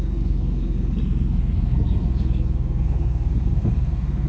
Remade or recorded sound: remade